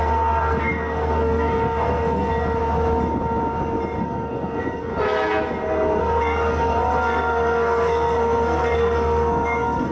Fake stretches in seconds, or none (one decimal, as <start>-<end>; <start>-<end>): 0.0-2.3; 4.0-4.9; 6.0-9.9